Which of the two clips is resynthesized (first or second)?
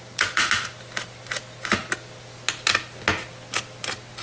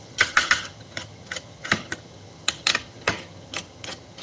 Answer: second